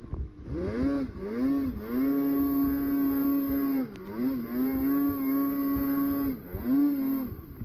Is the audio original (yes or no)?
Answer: yes